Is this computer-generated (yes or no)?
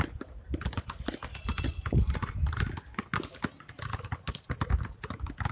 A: no